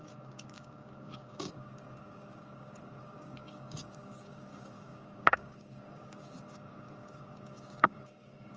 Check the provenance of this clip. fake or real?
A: fake